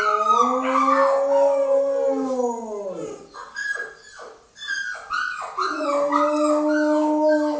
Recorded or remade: recorded